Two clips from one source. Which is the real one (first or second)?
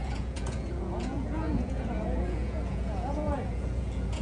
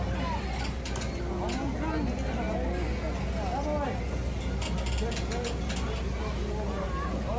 second